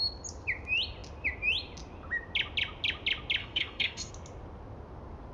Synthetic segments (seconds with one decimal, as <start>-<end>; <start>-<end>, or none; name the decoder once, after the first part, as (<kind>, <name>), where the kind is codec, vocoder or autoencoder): 3.4-4.1 (codec, SNAC)